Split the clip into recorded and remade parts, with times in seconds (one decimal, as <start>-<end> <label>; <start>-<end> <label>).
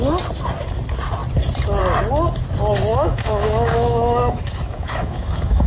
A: 0.0-2.9 recorded; 2.9-5.7 remade